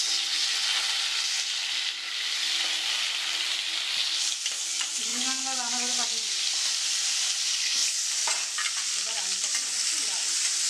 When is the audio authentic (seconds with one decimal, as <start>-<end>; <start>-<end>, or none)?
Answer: 0.0-10.7